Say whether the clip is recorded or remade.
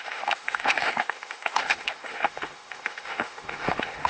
remade